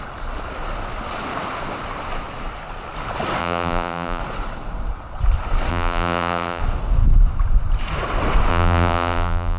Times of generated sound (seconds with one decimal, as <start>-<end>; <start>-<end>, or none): 3.4-4.2; 5.7-6.6; 8.5-9.6